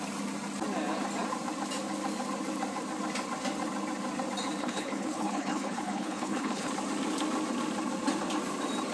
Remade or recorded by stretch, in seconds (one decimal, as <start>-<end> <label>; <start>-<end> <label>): 0.0-4.6 recorded; 4.6-6.7 remade; 6.7-8.9 recorded